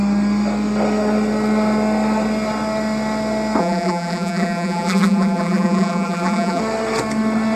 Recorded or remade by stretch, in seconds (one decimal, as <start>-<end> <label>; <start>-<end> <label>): 0.0-3.6 recorded; 3.6-6.6 remade; 6.6-7.6 recorded